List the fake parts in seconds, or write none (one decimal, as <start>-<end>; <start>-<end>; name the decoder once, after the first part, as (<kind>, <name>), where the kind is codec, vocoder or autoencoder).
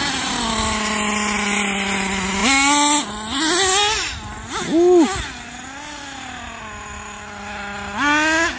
none